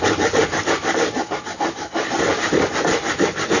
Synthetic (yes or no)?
no